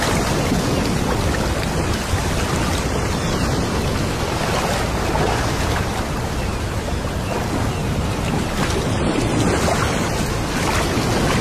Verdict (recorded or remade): recorded